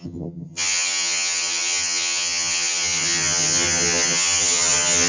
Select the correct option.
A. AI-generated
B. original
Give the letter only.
A